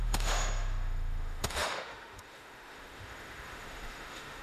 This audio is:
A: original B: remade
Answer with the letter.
B